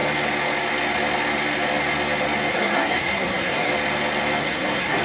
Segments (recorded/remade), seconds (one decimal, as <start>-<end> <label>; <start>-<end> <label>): 0.0-2.5 recorded; 2.5-3.7 remade; 3.7-4.4 recorded; 4.4-5.0 remade